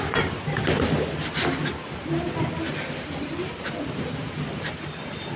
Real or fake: real